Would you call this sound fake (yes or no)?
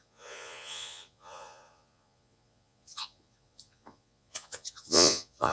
yes